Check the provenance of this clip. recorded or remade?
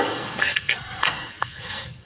remade